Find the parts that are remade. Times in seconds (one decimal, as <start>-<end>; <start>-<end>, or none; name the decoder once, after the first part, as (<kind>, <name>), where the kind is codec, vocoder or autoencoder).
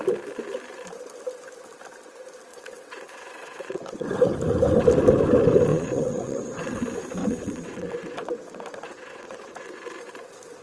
2.5-4.1 (vocoder, WaveNeXt); 5.7-6.8; 7.2-9.8